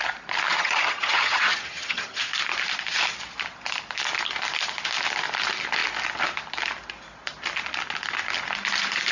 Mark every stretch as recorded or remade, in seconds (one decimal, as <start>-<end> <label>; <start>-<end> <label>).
0.0-0.5 recorded; 0.5-2.2 remade; 2.2-9.1 recorded